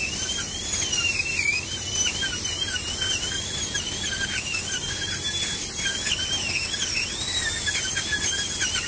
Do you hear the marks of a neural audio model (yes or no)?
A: no